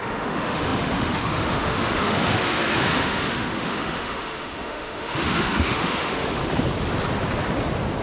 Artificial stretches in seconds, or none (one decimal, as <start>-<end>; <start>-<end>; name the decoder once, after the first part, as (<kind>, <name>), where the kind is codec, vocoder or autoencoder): 0.0-6.4 (autoencoder, DAC-VAE)

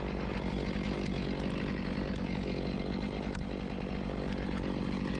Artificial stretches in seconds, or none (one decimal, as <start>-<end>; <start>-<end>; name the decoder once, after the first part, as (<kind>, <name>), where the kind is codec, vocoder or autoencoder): none

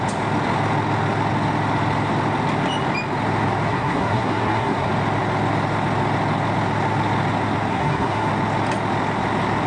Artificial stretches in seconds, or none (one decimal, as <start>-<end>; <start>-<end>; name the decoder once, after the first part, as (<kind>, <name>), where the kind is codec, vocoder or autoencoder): 3.7-4.9 (codec, SNAC); 7.7-8.3

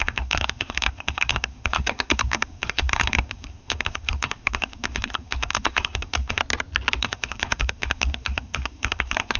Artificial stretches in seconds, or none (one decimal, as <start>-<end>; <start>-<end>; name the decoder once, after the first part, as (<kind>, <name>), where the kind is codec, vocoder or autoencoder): 0.0-6.4 (codec, SNAC); 7.0-9.4

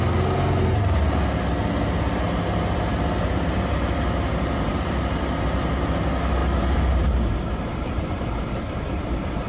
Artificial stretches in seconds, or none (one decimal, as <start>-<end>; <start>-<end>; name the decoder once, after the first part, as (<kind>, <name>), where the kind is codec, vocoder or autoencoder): 4.7-5.7 (vocoder, BigVGAN v2); 6.4-7.1

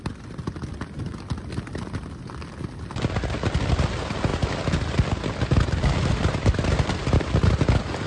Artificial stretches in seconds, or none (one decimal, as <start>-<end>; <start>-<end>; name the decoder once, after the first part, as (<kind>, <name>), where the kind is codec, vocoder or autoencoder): none

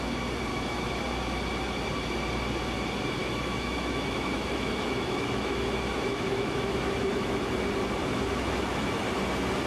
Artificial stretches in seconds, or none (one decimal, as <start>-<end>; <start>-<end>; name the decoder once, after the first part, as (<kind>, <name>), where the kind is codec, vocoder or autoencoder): 0.5-1.0 (autoencoder, DAC-VAE); 3.2-7.5; 8.0-9.0